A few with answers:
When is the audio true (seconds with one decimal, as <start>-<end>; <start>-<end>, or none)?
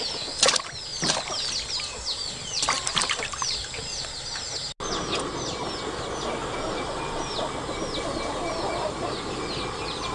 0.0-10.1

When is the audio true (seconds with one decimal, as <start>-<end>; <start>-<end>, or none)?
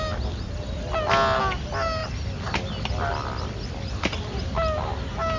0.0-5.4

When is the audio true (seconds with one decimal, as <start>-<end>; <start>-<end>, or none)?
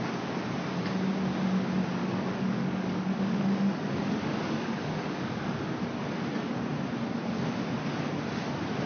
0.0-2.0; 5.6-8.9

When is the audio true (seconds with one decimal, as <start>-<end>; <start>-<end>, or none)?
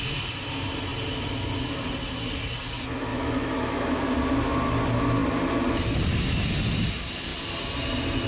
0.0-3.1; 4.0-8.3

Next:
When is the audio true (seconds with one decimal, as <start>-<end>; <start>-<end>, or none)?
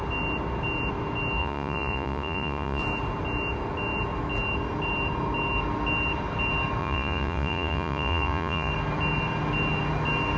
0.0-1.4; 2.8-6.8; 8.7-10.4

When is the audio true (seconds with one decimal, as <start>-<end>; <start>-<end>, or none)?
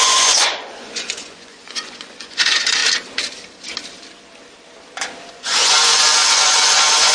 2.8-5.3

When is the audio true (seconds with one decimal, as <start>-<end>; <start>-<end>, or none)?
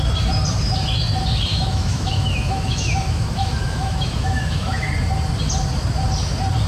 0.0-1.5; 4.9-6.7